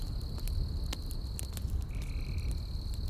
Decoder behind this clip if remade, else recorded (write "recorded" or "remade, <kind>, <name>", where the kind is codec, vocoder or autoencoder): recorded